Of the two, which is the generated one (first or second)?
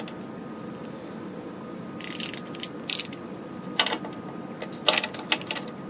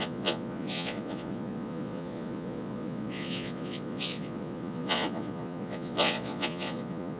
second